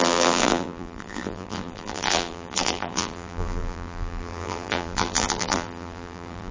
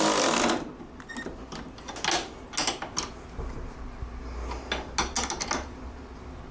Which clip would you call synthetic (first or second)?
first